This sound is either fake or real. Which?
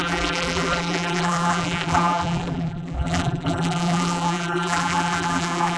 fake